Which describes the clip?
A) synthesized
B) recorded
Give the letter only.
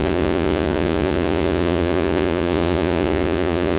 A